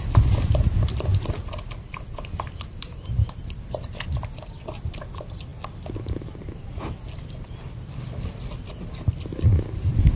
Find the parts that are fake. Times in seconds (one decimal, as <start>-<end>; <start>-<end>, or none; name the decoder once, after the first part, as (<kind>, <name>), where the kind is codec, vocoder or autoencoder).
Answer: none